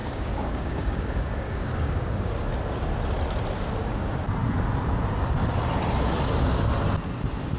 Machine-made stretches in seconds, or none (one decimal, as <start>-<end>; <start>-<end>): 0.0-2.3

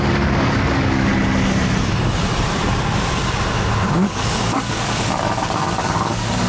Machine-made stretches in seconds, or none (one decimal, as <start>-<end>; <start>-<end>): 0.0-1.1; 3.9-6.5